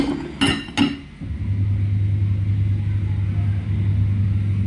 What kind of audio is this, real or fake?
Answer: real